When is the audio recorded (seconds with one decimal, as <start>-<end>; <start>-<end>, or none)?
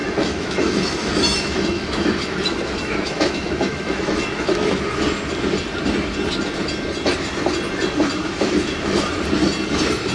4.8-8.2; 9.2-10.1